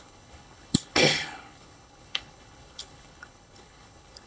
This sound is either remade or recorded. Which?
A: remade